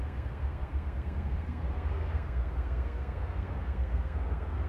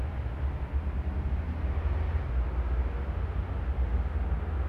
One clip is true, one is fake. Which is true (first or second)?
second